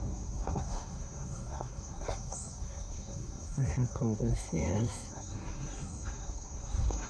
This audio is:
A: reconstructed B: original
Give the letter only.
A